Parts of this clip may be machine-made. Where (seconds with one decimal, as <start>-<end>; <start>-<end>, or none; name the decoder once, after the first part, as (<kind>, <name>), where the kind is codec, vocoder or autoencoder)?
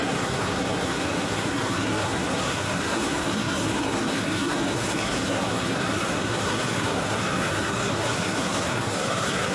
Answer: 0.0-9.5 (codec, SNAC)